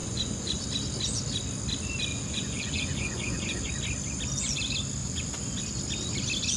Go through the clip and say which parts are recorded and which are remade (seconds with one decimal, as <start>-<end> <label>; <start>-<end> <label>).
0.0-0.6 remade; 0.6-2.1 recorded; 2.1-3.7 remade; 3.7-5.0 recorded; 5.0-5.6 remade; 5.6-6.6 recorded